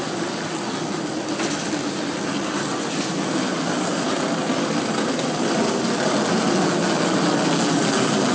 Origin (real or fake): real